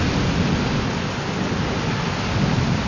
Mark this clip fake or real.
real